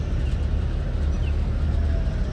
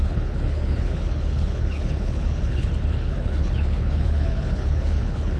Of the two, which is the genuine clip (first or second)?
first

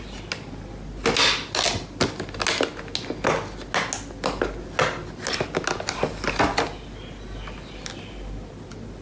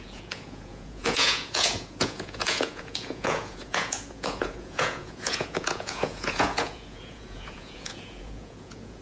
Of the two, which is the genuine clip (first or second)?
first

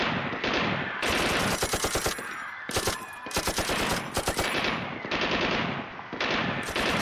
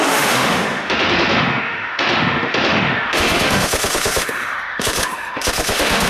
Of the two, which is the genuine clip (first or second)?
first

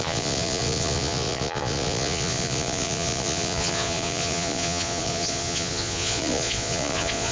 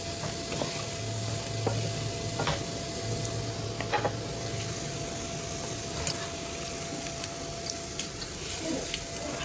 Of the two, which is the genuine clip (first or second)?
second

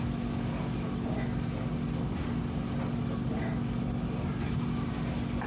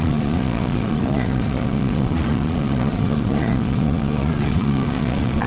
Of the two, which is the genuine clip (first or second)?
first